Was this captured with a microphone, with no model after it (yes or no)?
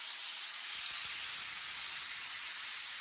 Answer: yes